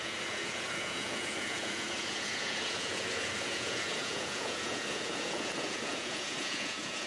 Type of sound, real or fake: fake